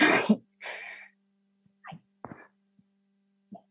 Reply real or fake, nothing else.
real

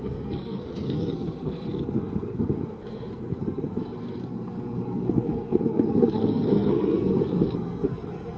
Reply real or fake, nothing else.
fake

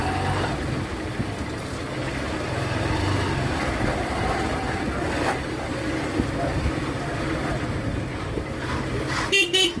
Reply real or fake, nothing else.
real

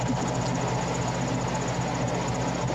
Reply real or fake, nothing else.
real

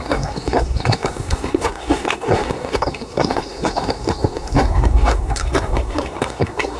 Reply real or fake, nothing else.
fake